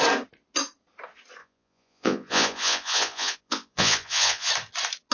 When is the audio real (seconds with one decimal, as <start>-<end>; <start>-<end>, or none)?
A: 0.0-1.4; 4.5-5.1